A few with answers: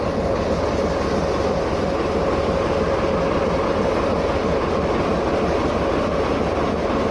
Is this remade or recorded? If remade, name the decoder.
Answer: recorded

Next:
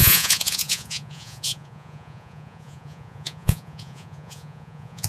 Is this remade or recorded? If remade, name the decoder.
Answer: remade, vocoder, Vocos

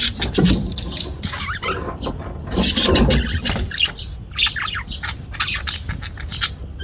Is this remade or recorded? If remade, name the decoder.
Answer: recorded